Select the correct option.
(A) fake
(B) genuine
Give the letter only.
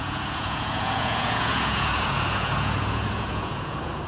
A